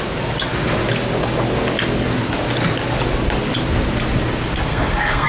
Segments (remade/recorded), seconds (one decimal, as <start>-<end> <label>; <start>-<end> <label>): 0.0-4.7 recorded; 4.7-5.3 remade